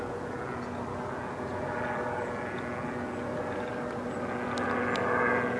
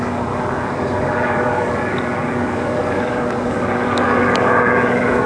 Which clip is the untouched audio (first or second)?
first